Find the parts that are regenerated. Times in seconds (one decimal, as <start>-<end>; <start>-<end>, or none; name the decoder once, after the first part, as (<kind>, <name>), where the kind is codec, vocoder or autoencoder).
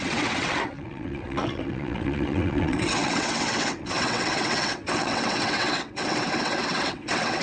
0.0-7.4 (vocoder, WaveNeXt)